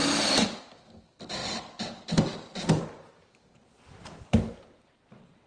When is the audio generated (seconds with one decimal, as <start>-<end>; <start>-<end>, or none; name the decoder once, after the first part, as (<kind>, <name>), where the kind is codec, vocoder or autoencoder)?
none